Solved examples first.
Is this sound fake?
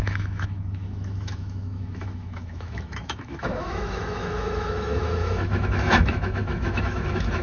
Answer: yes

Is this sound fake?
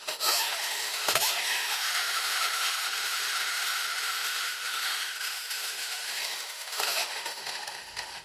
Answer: yes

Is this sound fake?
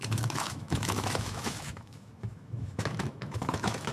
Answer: yes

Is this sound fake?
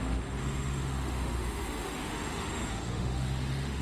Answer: yes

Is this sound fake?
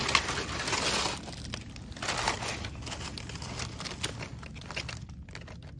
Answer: no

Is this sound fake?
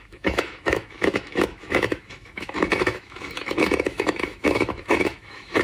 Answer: yes